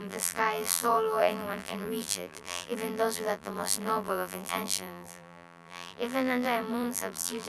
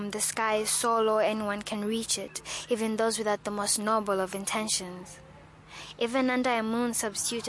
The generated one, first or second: first